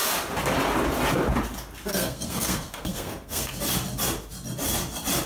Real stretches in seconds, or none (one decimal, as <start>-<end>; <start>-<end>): 0.0-1.9; 3.6-5.3